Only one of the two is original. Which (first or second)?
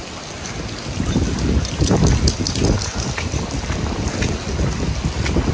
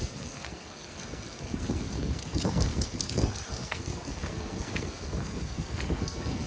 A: first